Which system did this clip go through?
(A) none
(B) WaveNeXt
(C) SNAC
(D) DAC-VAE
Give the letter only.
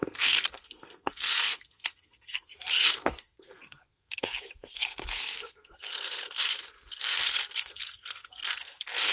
C